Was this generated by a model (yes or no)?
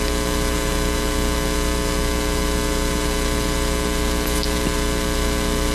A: no